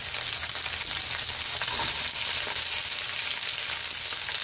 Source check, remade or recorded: recorded